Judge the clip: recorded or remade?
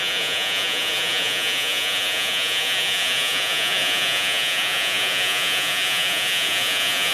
remade